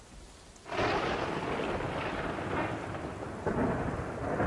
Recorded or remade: recorded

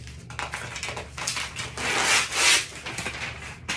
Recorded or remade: recorded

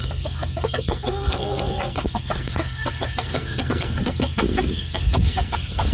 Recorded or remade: remade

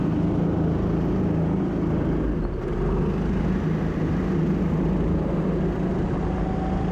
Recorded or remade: recorded